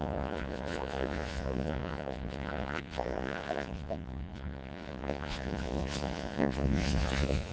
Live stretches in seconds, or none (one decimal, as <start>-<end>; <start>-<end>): none